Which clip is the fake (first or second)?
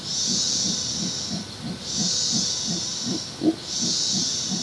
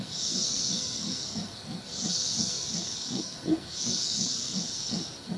second